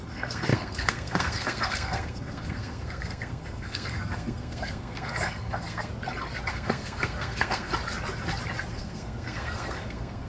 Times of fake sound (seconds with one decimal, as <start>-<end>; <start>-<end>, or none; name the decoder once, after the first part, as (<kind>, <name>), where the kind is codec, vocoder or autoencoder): 0.0-5.9 (codec, SNAC); 6.5-7.7; 8.7-10.3